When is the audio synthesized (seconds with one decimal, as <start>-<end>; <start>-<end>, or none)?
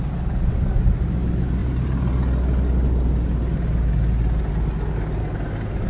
none